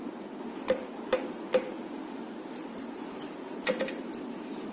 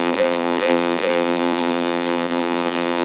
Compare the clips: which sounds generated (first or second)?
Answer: second